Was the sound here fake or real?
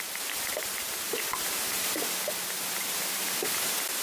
real